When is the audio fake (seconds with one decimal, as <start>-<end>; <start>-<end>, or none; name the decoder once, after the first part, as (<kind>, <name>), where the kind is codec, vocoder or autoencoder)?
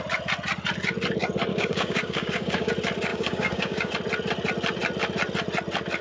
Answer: 1.5-2.7 (codec, DAC); 3.1-3.9